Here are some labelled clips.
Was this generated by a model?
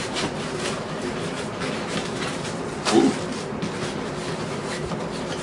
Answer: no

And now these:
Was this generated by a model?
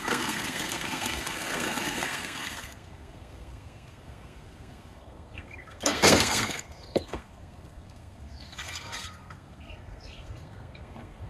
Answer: yes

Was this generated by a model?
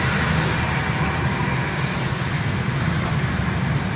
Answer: no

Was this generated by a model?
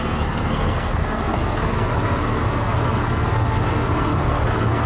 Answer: yes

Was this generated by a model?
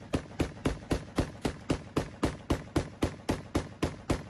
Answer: no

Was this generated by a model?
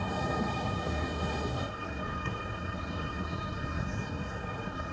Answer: yes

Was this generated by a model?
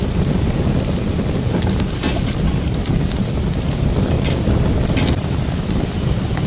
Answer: no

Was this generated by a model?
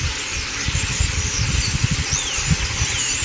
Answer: no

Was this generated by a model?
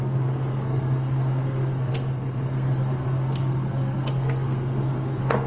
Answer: yes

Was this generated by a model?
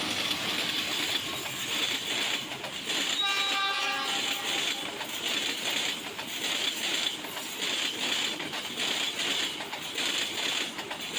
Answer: no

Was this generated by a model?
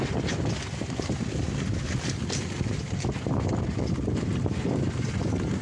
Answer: no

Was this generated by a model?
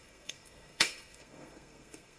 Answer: yes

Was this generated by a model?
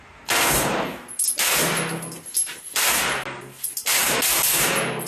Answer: no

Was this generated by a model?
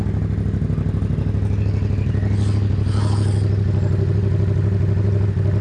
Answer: no